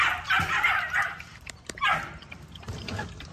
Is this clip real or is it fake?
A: fake